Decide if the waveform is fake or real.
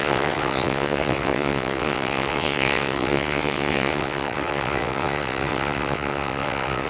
fake